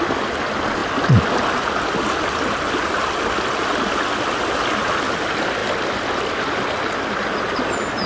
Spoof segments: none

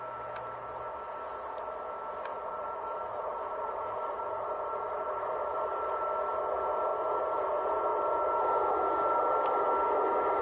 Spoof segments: 2.3-6.1 (vocoder, BigVGAN v2)

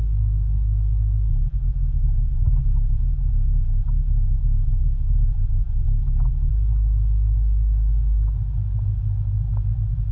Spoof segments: 1.3-6.5 (vocoder, BigVGAN v2)

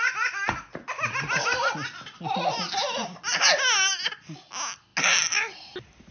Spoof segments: none

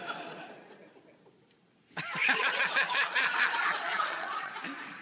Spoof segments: 2.2-4.5 (vocoder, Vocos)